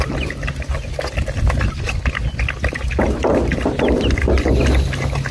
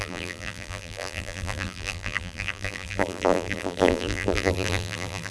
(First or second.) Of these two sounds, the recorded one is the first